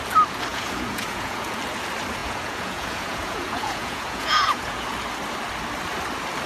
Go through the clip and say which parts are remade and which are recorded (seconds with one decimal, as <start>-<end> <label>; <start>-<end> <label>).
0.0-0.5 recorded; 0.5-1.6 remade; 1.6-2.2 recorded; 2.2-4.8 remade; 4.8-6.5 recorded